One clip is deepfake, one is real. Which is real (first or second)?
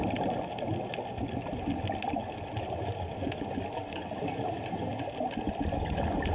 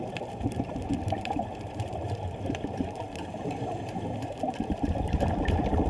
first